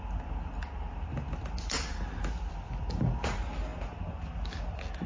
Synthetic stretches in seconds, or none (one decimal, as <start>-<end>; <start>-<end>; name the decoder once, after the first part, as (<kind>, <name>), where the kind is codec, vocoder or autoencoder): none